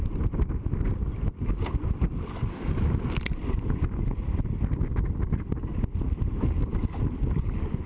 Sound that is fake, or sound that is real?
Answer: real